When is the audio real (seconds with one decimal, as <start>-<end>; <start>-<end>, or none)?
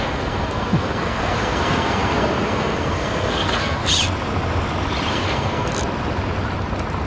3.8-5.1; 5.7-7.1